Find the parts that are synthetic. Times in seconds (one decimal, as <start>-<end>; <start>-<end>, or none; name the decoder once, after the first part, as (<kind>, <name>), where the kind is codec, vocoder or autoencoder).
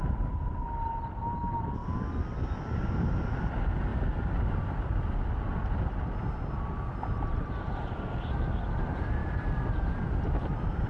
none